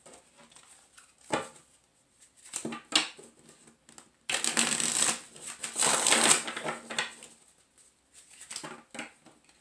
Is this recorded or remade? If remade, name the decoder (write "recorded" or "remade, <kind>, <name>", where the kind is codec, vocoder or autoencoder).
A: recorded